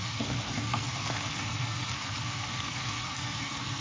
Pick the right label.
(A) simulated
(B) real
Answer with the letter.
A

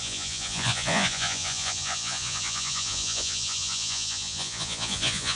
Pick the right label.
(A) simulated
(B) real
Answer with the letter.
A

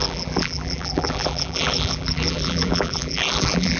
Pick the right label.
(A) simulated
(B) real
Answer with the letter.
A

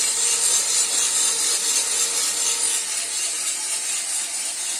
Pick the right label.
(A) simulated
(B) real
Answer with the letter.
B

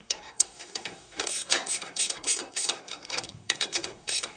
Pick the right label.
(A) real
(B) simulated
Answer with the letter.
B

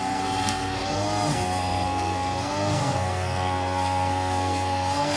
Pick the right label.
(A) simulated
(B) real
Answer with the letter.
A